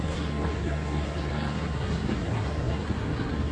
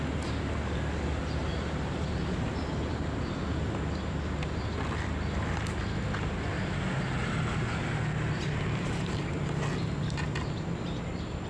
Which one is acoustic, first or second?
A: second